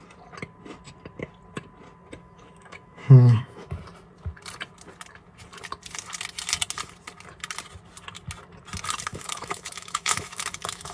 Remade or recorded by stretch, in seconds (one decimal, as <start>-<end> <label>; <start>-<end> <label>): 0.0-2.2 recorded; 2.2-3.8 remade; 3.8-9.1 recorded; 9.1-10.9 remade